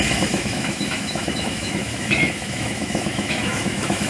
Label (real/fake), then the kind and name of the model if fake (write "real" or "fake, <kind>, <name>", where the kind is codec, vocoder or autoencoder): fake, autoencoder, DAC-VAE